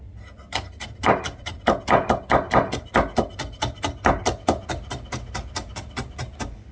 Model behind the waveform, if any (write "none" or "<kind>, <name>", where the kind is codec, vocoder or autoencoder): none